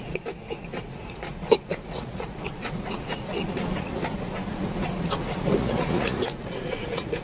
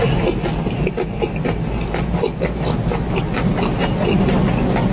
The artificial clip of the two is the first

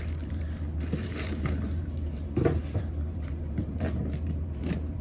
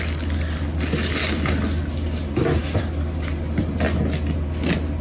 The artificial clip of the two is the first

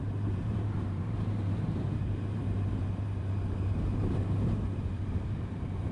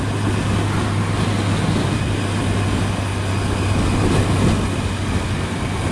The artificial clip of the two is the first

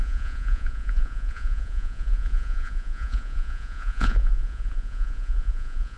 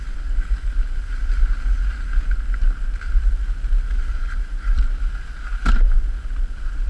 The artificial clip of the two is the first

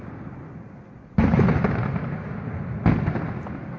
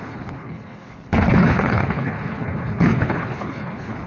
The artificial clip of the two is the second